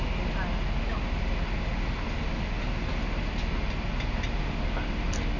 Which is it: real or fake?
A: real